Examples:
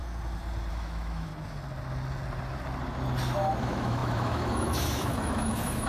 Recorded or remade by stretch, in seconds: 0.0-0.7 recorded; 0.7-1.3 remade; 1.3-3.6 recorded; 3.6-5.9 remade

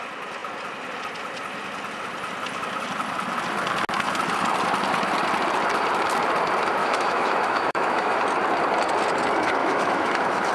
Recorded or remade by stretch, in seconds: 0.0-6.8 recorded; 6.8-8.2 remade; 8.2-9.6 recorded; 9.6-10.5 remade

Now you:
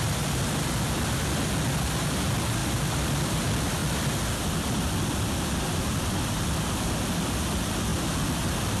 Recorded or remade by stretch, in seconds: 0.0-8.8 recorded

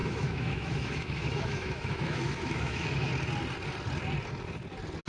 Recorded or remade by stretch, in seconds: 0.0-3.1 remade; 3.1-5.1 recorded

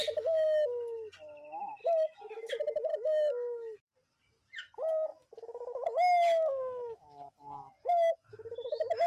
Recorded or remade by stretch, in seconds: 0.0-1.8 recorded; 1.8-2.5 remade; 2.5-2.9 recorded; 2.9-3.8 remade; 3.8-5.1 recorded; 5.1-9.1 remade